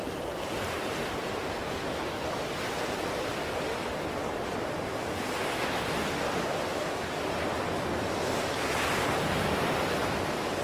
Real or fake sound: real